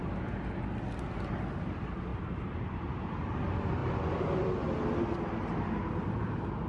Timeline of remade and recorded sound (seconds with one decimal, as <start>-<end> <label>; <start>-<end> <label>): 0.0-2.1 recorded; 2.1-2.9 remade; 2.9-6.7 recorded